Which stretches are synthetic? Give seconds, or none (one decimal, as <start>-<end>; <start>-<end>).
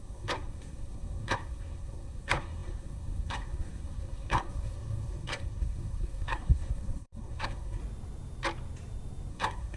0.0-7.8; 9.3-9.8